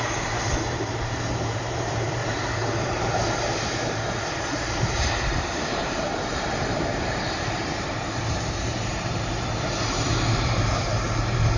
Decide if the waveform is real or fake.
fake